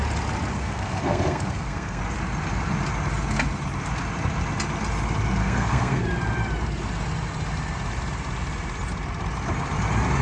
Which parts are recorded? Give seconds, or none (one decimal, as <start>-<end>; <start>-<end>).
0.0-0.5; 2.0-5.4; 6.0-10.2